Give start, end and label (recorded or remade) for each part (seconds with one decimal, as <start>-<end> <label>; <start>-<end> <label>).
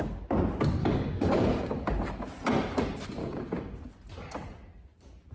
0.0-0.8 recorded; 0.8-1.9 remade; 1.9-3.2 recorded; 3.2-3.8 remade; 3.8-5.3 recorded